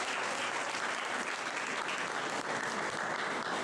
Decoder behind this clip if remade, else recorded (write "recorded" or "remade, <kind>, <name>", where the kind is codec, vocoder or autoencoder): recorded